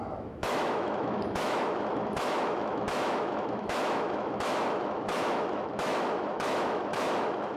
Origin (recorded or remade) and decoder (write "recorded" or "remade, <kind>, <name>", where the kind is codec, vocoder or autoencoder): remade, autoencoder, DAC-VAE